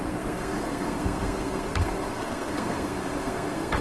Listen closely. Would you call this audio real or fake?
fake